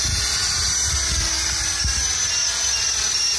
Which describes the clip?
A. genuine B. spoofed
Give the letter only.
A